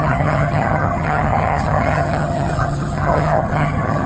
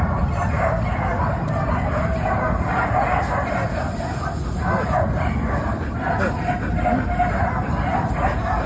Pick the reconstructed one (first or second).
first